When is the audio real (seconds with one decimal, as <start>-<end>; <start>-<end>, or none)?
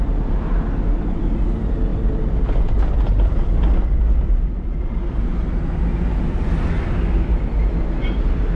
0.0-8.6